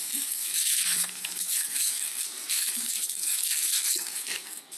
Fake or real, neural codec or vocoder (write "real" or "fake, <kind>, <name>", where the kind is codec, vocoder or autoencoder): fake, codec, SNAC